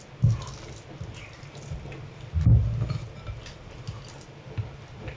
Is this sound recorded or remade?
recorded